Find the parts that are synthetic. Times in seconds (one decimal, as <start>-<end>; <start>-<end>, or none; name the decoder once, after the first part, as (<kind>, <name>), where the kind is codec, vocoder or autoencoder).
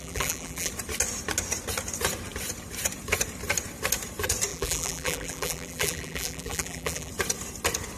0.0-0.7 (vocoder, BigVGAN v2); 4.5-7.1